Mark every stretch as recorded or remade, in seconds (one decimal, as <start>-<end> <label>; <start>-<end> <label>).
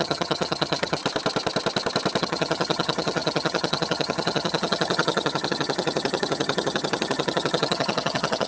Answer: 0.0-1.0 remade; 1.0-2.2 recorded; 2.2-8.5 remade